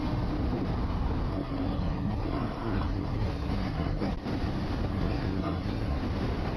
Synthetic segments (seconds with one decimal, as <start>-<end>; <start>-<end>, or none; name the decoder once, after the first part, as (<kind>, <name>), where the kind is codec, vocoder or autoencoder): 1.3-4.1 (codec, SNAC); 4.9-6.0